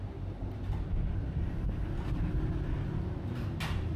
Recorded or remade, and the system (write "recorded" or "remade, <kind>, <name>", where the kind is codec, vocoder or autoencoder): recorded